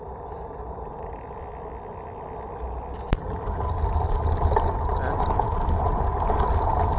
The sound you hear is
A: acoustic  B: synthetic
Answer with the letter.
A